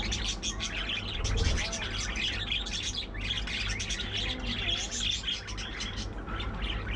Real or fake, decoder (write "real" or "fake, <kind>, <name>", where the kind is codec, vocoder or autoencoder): real